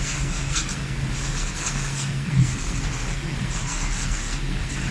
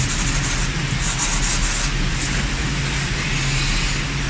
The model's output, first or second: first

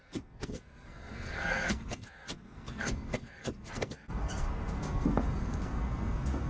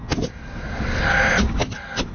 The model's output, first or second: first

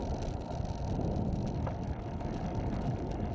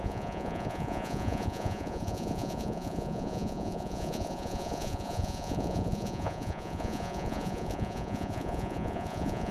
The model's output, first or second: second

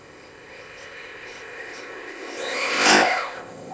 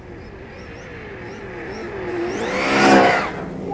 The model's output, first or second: first